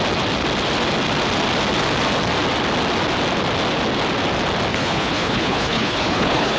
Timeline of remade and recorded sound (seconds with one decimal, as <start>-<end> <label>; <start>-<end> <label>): 0.0-4.7 recorded; 4.7-6.6 remade